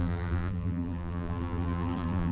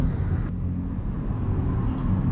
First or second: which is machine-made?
first